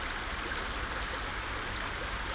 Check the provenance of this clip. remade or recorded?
recorded